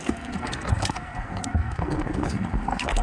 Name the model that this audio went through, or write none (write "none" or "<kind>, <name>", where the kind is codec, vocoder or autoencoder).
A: codec, SNAC